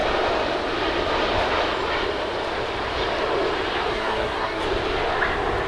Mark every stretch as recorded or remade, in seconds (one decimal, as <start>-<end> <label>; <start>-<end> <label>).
0.0-3.9 recorded; 3.9-4.6 remade; 4.6-5.7 recorded